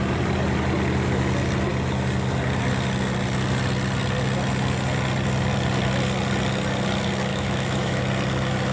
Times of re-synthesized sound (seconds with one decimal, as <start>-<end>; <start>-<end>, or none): 7.3-8.0